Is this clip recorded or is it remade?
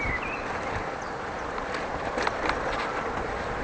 recorded